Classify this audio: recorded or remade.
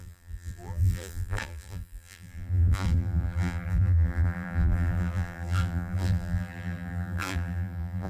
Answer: remade